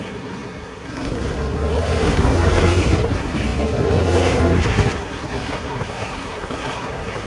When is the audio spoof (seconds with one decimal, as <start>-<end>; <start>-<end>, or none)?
0.0-7.3